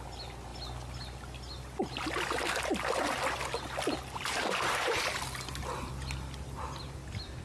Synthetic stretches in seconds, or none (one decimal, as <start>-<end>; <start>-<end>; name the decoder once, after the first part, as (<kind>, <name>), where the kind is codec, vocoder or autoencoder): none